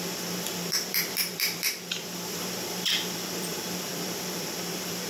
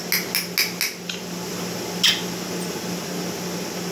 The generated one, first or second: first